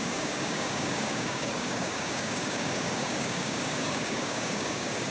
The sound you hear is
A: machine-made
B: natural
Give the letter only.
A